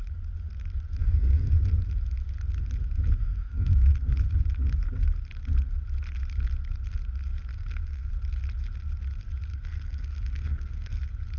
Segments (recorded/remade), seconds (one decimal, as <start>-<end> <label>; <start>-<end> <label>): 0.0-1.0 recorded; 1.0-1.5 remade; 1.5-3.2 recorded; 3.2-3.9 remade; 3.9-7.5 recorded; 7.5-8.1 remade; 8.1-9.5 recorded; 9.5-11.0 remade; 11.0-11.4 recorded